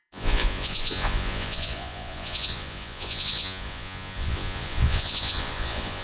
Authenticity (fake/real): fake